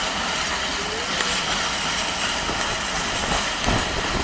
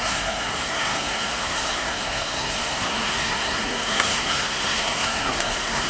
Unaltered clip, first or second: first